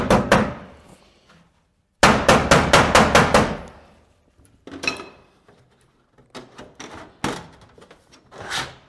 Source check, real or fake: real